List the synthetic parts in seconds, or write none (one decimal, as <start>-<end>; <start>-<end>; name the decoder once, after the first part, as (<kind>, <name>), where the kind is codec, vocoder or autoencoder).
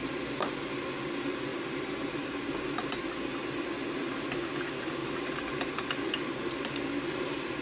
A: 1.5-2.4 (vocoder, BigVGAN v2); 5.0-5.7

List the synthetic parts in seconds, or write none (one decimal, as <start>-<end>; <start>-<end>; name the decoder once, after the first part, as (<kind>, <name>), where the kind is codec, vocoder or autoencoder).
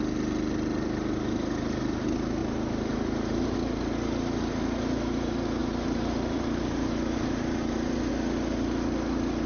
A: 2.4-2.9 (vocoder, BigVGAN v2); 5.6-8.1